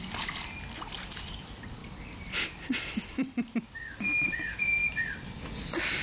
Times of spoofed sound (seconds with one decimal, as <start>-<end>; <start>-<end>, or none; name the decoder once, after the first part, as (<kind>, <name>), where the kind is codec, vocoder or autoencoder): none